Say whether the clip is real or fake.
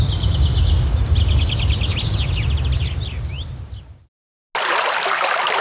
real